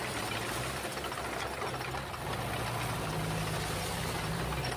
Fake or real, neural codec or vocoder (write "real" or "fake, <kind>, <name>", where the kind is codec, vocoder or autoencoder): real